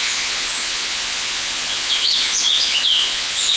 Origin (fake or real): fake